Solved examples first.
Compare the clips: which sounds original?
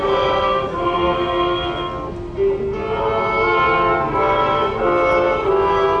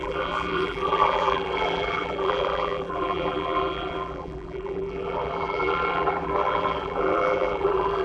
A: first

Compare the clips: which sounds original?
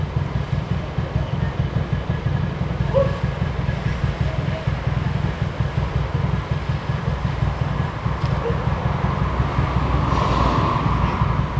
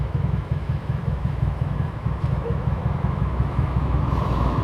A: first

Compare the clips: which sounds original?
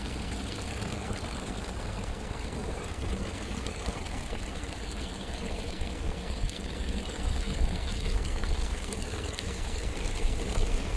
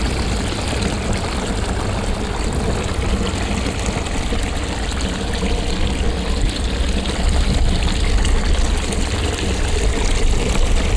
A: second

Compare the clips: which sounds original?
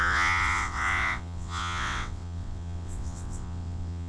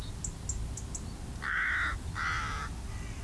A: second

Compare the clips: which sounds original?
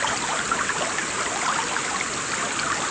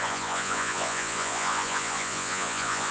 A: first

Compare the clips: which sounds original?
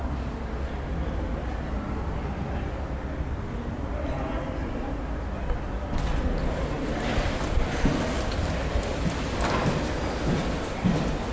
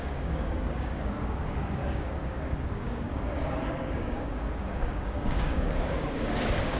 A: first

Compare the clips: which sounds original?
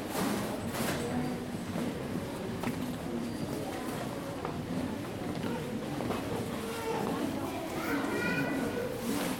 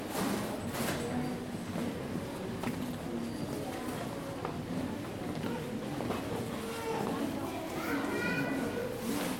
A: second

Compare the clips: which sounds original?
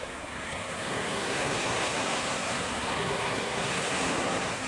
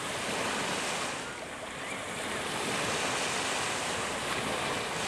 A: second